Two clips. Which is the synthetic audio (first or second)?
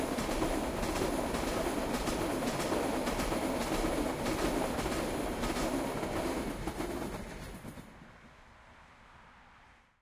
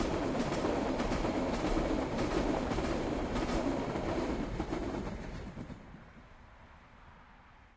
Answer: second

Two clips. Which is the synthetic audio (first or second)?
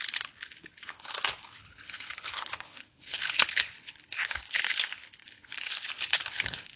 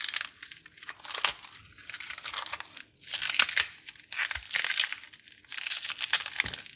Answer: first